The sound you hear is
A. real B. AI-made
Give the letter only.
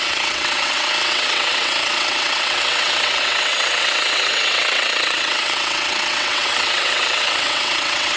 B